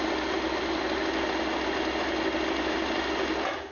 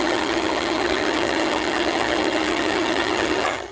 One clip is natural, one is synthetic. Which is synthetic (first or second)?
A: second